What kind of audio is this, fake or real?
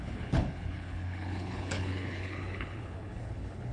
fake